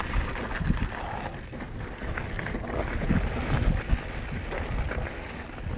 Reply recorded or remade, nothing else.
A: recorded